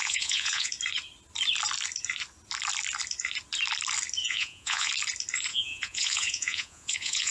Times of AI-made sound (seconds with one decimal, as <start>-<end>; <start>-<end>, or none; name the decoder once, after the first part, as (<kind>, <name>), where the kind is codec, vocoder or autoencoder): 0.0-0.7 (vocoder, Vocos); 4.2-4.9; 5.5-7.3